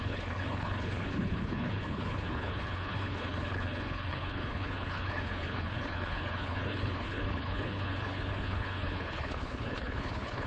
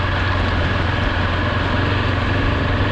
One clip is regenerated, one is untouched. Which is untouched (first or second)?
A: second